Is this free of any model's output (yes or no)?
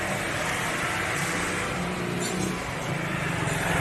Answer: yes